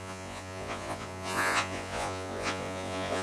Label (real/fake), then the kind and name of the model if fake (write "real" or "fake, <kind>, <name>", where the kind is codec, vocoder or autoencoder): fake, vocoder, Vocos